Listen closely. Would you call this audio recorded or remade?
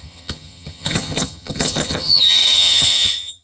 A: remade